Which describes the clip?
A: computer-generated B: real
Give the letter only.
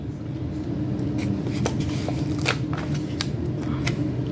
B